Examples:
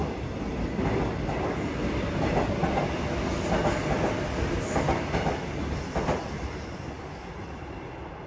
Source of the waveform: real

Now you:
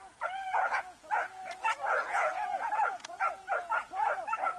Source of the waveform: fake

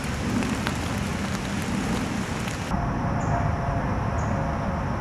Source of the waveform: real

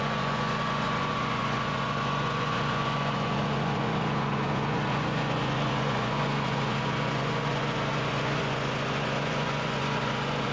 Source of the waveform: fake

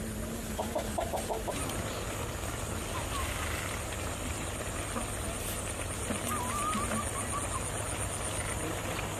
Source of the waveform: real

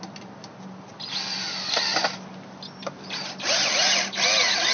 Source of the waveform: real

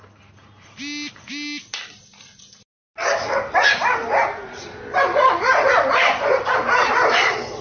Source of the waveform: real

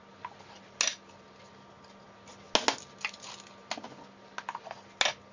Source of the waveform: real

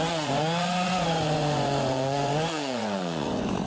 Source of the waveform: fake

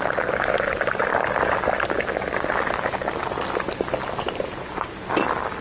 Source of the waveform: real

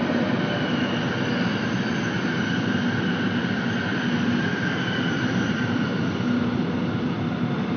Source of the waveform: real